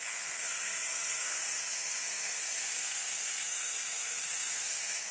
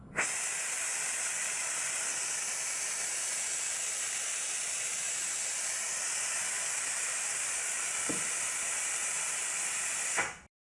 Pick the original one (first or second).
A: second